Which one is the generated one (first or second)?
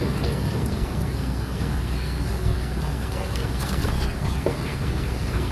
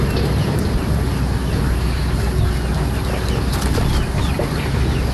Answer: first